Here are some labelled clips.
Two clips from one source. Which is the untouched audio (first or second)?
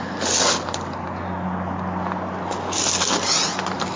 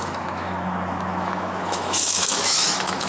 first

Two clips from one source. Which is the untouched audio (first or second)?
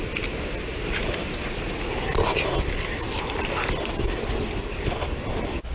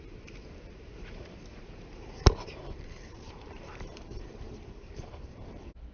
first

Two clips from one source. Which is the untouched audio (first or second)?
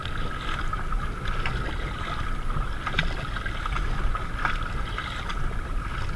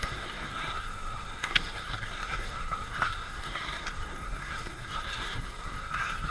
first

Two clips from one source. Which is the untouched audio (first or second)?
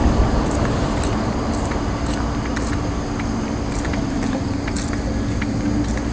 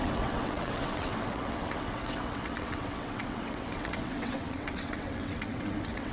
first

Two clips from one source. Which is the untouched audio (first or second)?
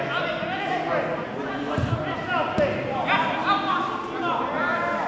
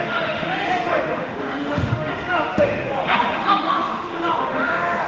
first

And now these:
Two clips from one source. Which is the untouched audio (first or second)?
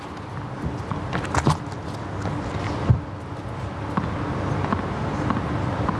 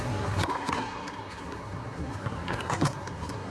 first